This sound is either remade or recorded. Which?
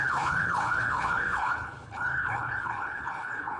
remade